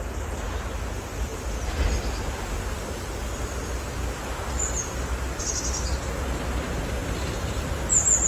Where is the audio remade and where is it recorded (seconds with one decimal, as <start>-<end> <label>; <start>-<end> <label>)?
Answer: 0.0-7.0 recorded; 7.0-7.7 remade; 7.7-8.3 recorded